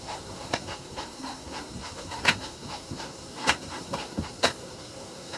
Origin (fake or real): fake